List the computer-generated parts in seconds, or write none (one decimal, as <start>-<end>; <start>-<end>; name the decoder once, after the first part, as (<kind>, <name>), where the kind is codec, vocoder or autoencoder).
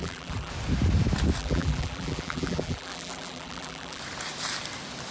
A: 0.0-0.5 (vocoder, BigVGAN v2); 1.4-4.0